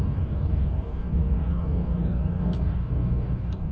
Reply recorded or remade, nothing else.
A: remade